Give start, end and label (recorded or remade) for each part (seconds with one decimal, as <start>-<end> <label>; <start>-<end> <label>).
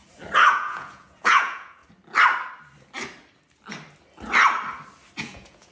0.0-0.5 recorded; 0.5-1.8 remade; 1.8-5.2 recorded; 5.2-5.7 remade